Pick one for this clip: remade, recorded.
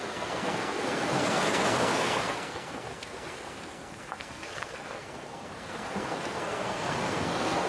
remade